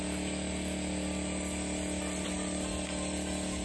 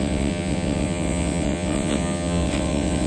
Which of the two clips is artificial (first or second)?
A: second